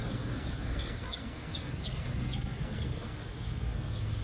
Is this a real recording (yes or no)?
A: no